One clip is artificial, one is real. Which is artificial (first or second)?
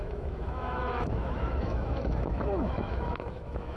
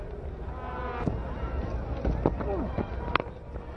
first